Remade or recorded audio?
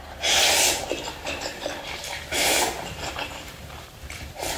remade